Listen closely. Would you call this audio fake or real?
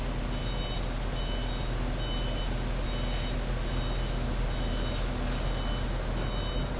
real